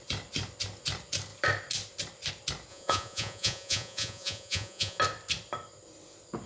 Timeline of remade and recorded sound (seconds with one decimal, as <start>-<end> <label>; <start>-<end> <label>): 0.0-2.7 recorded; 2.7-5.0 remade; 5.0-6.5 recorded